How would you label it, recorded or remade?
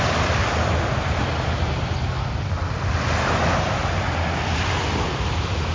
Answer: recorded